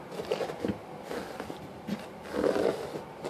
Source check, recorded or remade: recorded